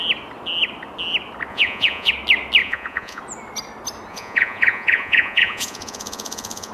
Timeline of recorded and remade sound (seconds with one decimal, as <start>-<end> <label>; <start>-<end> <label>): 0.0-1.5 recorded; 1.5-2.1 remade; 2.1-2.6 recorded; 2.6-3.2 remade; 3.2-4.1 recorded; 4.1-6.7 remade